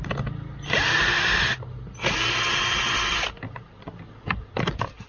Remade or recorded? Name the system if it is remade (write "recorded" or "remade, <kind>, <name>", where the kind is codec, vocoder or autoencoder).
recorded